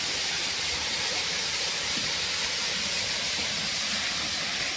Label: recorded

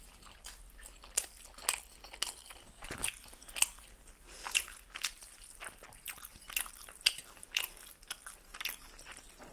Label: recorded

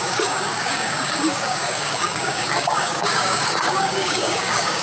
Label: remade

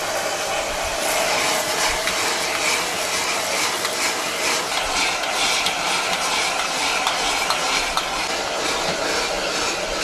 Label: recorded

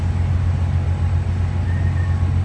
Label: recorded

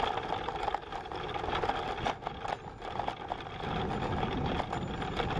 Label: recorded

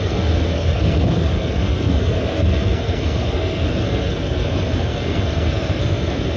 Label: remade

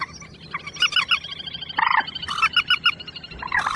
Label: recorded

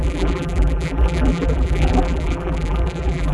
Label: remade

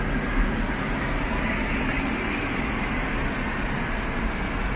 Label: recorded